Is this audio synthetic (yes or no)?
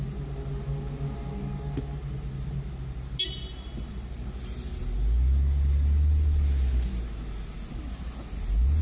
no